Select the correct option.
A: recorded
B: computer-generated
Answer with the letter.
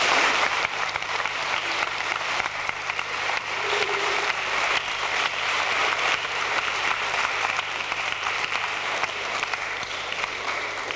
B